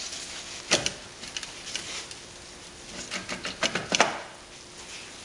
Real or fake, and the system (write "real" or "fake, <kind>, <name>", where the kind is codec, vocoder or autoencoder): real